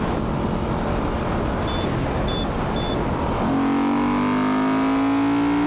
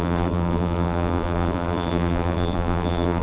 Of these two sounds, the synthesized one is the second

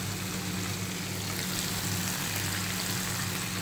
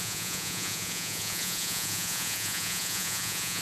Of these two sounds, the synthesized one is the second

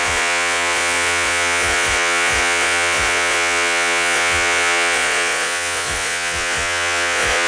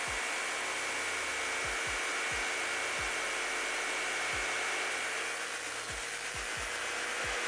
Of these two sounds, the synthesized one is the first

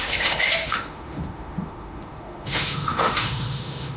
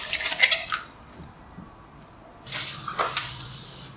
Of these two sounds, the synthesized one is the first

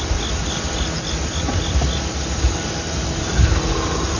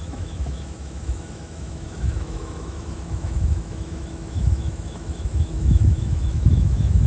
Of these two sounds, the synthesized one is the second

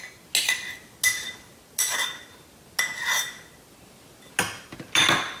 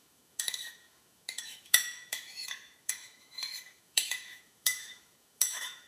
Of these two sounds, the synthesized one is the second